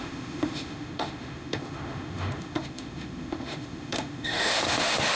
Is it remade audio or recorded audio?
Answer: remade